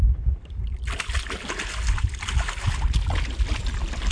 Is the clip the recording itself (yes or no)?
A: yes